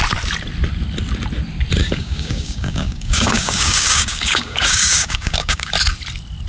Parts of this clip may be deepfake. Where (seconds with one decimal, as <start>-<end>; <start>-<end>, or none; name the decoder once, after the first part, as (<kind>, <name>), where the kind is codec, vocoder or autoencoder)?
1.8-5.7 (codec, DAC)